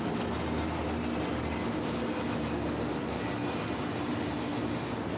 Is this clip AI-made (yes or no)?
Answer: no